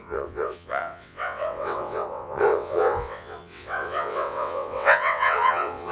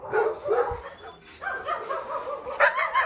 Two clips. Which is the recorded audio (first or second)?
second